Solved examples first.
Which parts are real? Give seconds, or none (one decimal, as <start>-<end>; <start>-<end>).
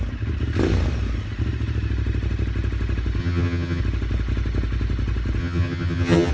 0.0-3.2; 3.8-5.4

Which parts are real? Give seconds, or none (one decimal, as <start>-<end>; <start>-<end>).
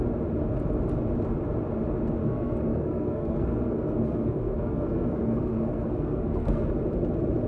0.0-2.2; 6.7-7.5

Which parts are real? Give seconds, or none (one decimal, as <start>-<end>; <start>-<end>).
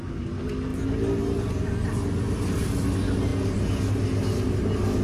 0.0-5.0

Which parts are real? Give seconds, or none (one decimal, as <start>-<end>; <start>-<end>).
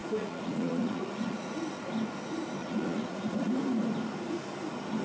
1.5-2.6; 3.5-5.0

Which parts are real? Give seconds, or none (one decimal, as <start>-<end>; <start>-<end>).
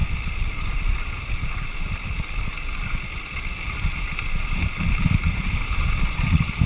0.0-6.7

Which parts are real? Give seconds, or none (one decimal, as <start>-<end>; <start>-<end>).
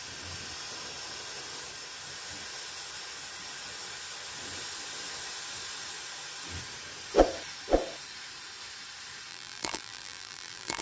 0.0-9.3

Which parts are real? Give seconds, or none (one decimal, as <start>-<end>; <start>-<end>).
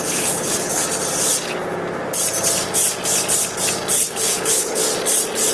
0.8-4.1; 4.8-5.5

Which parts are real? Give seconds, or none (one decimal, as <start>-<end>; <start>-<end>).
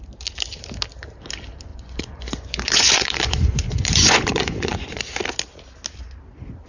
0.0-1.7; 5.0-6.7